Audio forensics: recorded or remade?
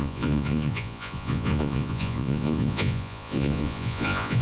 remade